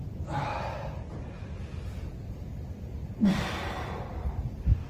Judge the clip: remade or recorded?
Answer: recorded